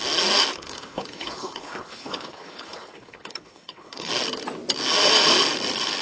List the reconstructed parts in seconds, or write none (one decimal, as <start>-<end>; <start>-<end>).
0.5-4.1